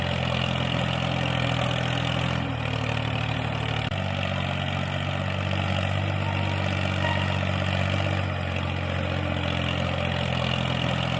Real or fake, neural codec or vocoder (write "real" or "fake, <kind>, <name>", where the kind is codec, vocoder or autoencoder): real